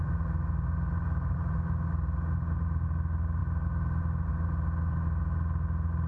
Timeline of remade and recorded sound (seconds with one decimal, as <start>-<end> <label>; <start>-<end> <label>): 0.0-6.1 recorded